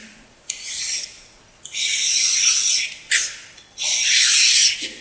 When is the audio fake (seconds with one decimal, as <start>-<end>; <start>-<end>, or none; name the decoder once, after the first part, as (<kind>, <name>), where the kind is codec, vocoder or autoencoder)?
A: 0.0-3.0 (vocoder, Vocos)